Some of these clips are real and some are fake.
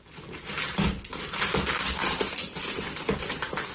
real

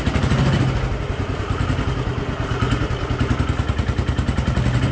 real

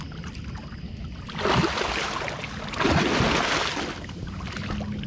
real